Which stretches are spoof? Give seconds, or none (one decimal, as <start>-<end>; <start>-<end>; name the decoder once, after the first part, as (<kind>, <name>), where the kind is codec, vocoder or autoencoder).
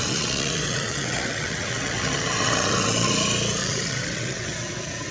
0.0-3.1 (vocoder, WaveNeXt); 3.6-4.5